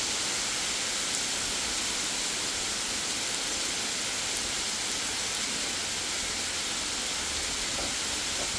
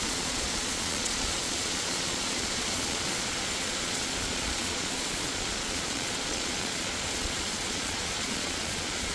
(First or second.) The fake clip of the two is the second